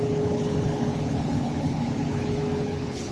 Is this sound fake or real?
fake